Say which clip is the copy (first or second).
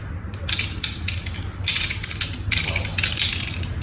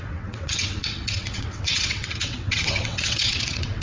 second